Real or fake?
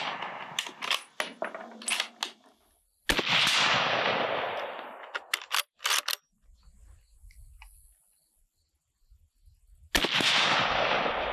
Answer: real